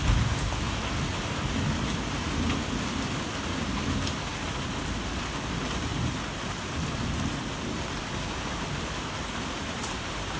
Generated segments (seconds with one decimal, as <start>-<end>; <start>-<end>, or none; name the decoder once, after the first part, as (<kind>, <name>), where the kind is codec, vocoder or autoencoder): none